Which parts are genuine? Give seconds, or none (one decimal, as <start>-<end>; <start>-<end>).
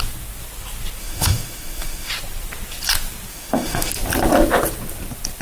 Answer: 0.0-1.0; 2.1-3.3; 3.9-5.4